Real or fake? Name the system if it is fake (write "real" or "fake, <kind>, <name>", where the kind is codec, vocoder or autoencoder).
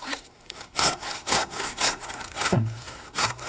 fake, codec, SNAC